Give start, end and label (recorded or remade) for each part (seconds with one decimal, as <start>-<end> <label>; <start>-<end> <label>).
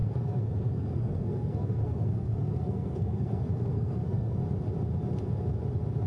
0.0-4.4 remade; 4.4-6.1 recorded